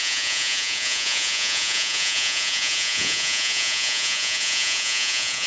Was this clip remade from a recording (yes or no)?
yes